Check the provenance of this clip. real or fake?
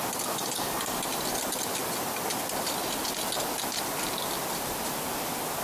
real